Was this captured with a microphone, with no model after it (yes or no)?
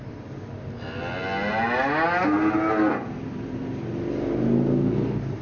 yes